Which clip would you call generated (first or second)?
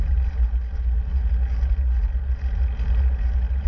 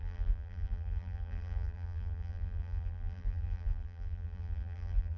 second